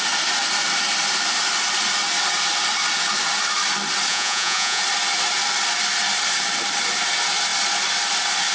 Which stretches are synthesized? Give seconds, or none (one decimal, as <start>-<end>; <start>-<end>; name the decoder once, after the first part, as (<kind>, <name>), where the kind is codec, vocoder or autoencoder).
4.1-4.8 (vocoder, Vocos)